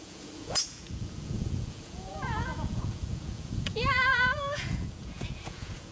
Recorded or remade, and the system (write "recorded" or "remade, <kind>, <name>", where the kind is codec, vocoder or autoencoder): remade, vocoder, Vocos